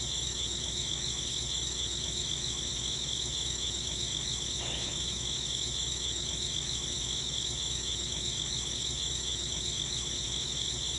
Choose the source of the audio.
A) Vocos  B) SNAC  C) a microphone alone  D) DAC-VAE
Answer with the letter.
D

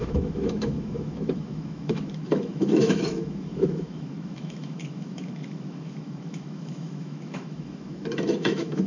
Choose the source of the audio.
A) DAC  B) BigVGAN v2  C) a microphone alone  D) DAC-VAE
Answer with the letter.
D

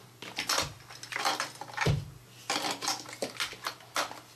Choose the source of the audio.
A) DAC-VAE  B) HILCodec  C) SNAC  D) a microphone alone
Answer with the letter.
D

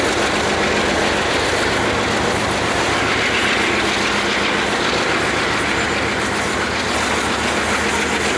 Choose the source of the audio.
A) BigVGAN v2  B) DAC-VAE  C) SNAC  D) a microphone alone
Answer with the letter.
D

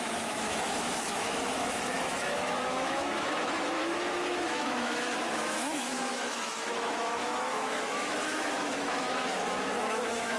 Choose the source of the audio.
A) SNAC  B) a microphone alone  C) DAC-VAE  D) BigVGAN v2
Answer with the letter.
C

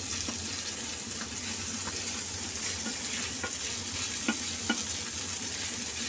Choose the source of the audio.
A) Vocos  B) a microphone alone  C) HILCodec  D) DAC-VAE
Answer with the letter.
B